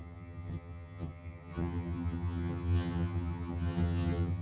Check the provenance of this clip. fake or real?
fake